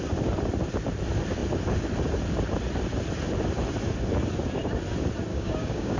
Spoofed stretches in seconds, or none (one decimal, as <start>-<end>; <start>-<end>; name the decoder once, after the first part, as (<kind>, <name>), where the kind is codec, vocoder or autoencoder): 5.3-6.0 (codec, DAC)